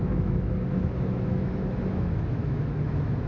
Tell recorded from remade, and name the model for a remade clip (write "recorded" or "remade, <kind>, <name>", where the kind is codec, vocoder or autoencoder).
remade, autoencoder, DAC-VAE